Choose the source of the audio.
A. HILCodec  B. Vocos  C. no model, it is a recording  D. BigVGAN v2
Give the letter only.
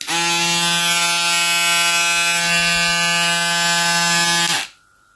C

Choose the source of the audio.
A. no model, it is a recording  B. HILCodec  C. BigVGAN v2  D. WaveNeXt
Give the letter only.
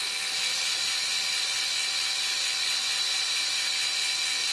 A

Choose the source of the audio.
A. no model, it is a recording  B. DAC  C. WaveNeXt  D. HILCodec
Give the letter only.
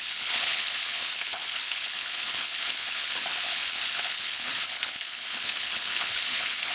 D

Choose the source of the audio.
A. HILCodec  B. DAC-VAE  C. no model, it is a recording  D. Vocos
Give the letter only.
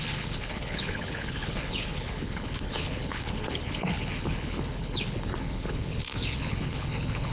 A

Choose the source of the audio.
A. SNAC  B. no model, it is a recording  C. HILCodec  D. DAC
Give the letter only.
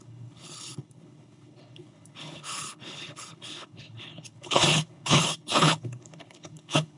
C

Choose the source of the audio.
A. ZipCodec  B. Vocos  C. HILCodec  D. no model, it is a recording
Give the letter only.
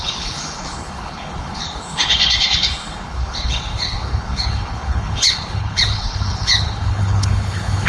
C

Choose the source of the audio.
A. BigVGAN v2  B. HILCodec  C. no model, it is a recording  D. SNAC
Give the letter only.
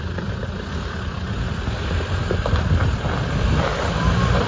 C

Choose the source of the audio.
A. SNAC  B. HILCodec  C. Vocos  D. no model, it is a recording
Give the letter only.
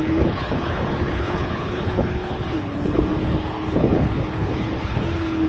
B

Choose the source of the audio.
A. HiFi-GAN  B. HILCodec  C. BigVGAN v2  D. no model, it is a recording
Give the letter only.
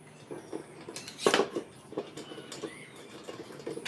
D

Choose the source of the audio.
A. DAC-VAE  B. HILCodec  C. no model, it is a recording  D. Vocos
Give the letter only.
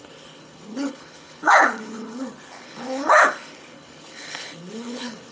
B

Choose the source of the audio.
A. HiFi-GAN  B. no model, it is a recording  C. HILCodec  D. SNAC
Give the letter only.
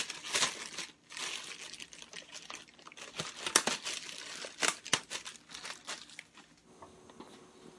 B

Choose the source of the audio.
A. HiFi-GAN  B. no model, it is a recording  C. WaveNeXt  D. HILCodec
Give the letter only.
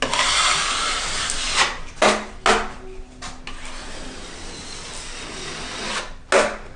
B